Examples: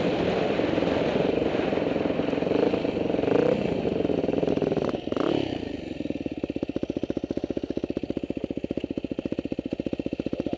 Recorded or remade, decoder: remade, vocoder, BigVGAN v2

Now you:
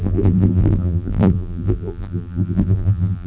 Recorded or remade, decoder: remade, vocoder, BigVGAN v2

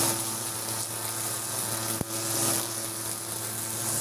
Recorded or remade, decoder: recorded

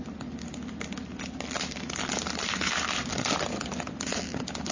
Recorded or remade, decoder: recorded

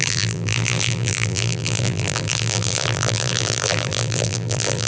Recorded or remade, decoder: remade, vocoder, BigVGAN v2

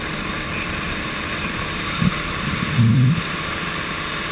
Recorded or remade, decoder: remade, vocoder, BigVGAN v2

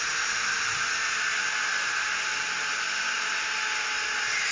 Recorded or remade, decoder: recorded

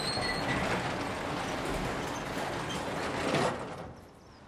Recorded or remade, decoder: recorded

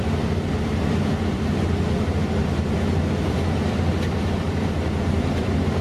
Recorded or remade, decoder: remade, vocoder, BigVGAN v2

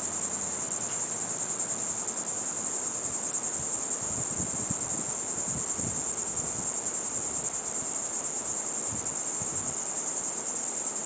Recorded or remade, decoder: recorded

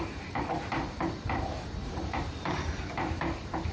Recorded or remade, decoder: remade, vocoder, BigVGAN v2